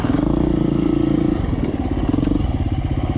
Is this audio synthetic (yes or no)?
no